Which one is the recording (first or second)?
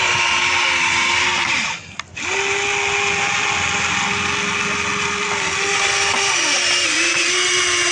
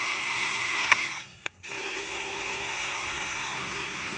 first